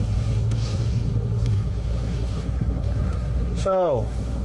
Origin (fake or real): fake